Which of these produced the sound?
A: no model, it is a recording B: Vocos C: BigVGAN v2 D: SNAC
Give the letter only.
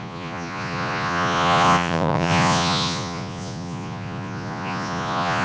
B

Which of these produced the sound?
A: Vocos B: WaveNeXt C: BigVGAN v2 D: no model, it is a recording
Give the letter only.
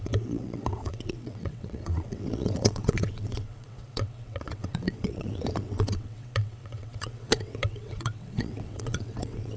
B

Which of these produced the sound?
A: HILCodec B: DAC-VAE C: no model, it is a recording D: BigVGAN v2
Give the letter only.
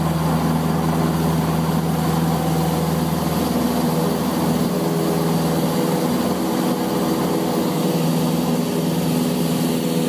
C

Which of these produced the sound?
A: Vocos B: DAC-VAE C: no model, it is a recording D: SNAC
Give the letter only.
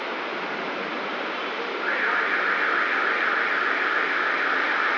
C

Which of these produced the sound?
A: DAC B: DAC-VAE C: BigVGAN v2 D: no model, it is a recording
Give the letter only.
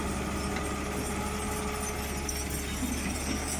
D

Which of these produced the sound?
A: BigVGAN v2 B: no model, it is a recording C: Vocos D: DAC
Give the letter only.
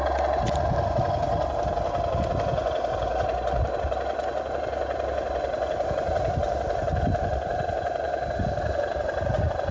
B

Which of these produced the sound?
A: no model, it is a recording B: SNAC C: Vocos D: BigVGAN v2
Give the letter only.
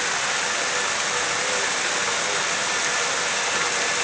A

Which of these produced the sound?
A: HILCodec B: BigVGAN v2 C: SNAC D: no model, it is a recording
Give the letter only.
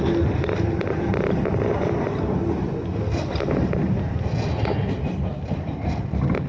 D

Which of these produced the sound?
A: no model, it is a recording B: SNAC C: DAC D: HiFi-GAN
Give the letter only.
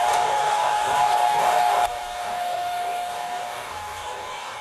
C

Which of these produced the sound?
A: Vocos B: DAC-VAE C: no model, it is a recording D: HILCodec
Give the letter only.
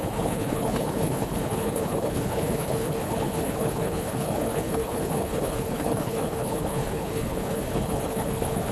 D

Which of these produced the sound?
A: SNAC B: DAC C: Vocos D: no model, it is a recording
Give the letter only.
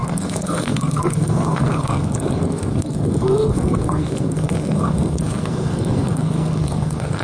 A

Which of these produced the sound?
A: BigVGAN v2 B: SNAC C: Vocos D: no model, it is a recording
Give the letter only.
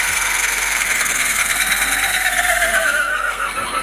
B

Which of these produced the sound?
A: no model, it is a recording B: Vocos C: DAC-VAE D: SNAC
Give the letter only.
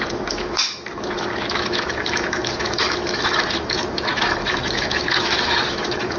C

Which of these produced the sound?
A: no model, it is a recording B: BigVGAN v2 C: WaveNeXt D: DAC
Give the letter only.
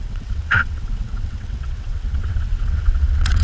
C